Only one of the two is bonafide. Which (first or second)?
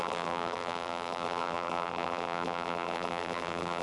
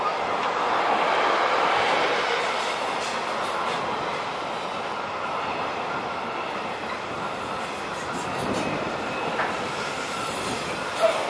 second